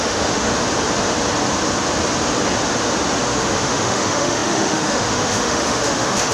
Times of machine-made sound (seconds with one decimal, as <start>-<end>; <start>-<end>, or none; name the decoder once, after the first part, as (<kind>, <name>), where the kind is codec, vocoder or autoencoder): 0.0-0.5 (autoencoder, DAC-VAE); 3.2-6.3